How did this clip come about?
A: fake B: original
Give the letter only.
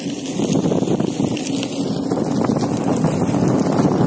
B